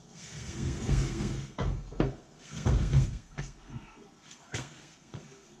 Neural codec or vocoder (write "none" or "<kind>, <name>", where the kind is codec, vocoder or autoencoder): codec, SNAC